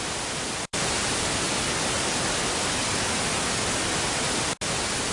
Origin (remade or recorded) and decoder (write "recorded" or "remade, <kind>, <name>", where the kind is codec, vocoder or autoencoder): recorded